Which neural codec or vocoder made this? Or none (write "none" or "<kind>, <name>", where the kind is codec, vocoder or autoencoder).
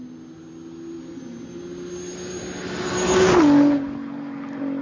none